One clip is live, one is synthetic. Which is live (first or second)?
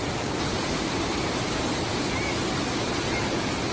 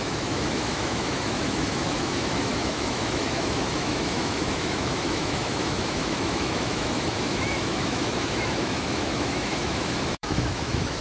first